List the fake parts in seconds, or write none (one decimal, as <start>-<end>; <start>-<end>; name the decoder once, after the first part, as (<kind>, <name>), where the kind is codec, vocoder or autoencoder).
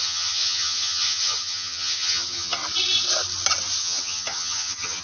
0.0-2.6 (vocoder, HiFi-GAN); 3.8-5.0